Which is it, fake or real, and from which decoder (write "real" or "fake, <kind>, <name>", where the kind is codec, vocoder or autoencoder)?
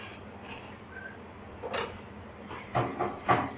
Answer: real